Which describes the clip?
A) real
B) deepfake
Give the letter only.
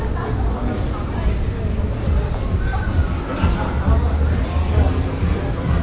A